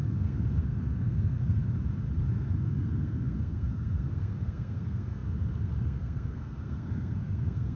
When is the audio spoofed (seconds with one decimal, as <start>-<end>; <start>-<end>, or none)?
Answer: 0.0-1.6; 2.2-7.8